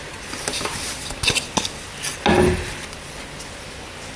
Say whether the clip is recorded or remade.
recorded